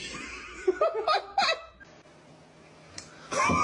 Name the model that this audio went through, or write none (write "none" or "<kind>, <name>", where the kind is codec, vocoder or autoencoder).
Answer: none